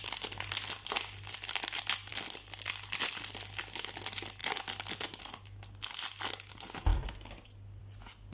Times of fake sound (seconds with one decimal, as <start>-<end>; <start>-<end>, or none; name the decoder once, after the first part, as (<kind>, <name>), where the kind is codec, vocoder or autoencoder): 2.1-3.6 (vocoder, BigVGAN v2)